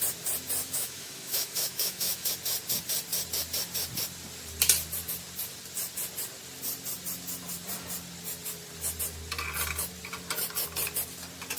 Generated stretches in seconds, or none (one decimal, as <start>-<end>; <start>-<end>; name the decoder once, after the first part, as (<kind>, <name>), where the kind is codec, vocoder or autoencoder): 0.6-2.3 (autoencoder, DAC-VAE)